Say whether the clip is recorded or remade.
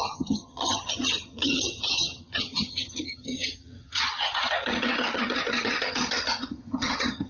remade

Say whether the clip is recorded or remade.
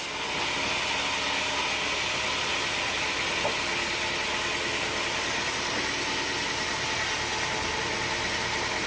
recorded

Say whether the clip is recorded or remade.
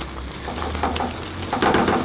recorded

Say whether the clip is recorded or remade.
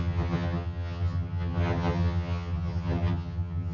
remade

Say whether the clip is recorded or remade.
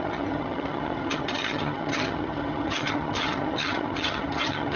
remade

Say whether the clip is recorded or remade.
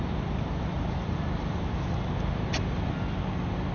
recorded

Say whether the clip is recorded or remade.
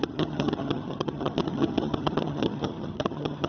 remade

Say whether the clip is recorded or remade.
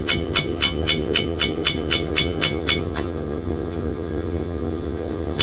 remade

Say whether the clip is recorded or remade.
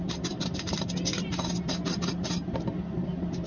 recorded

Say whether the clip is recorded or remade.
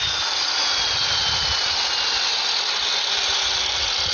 recorded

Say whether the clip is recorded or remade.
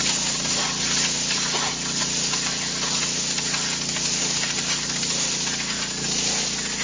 recorded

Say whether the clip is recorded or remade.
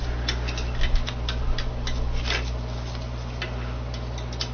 recorded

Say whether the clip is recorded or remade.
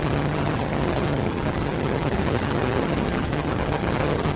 remade